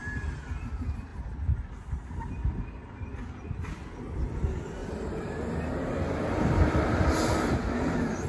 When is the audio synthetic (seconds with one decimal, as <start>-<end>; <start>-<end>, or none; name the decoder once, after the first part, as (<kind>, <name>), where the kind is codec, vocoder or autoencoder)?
4.8-7.0 (vocoder, BigVGAN v2)

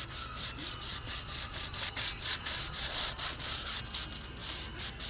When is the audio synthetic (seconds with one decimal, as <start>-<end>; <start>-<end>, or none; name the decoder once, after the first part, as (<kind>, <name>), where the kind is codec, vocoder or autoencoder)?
0.6-3.7 (vocoder, Vocos)

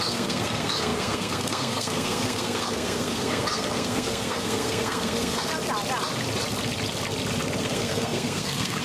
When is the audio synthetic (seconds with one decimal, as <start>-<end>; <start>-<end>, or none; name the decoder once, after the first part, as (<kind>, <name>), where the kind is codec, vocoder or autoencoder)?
0.0-5.5 (codec, SNAC); 7.6-8.8